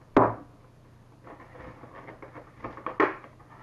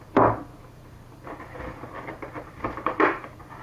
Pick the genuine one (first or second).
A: first